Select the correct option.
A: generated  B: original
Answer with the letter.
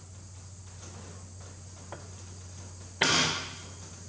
B